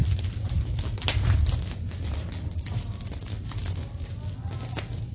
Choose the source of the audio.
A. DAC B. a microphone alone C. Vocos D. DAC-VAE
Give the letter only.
B